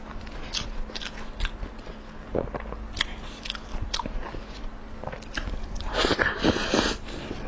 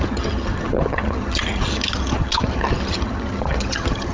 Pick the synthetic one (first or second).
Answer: second